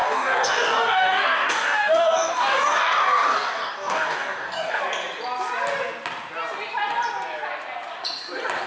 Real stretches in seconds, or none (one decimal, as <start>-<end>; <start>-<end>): 4.8-8.7